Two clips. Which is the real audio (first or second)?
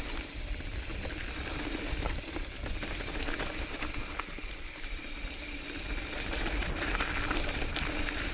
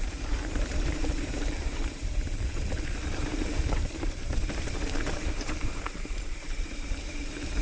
first